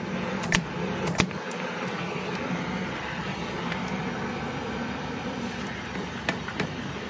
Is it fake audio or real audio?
real